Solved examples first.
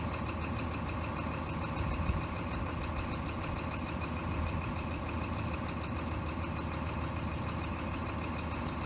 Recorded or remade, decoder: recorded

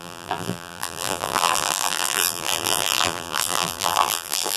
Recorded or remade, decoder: remade, vocoder, BigVGAN v2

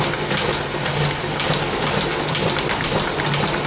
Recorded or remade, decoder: recorded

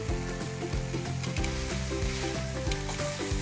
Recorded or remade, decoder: recorded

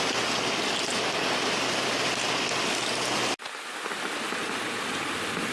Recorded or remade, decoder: recorded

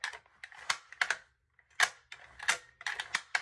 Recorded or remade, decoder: recorded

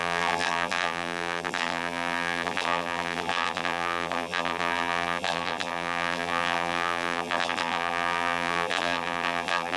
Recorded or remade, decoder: remade, vocoder, BigVGAN v2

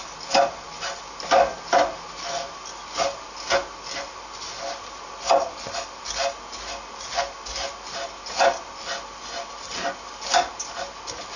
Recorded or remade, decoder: recorded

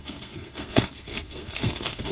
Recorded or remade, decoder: remade, codec, SNAC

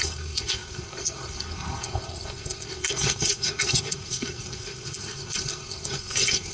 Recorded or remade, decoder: remade, codec, SNAC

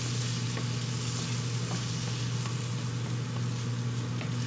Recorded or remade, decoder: recorded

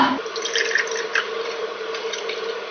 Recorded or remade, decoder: recorded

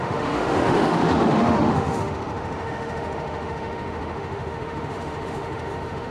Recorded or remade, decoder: remade, autoencoder, DAC-VAE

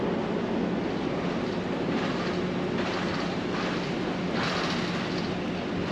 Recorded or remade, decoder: recorded